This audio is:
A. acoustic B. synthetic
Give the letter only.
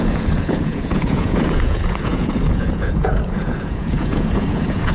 B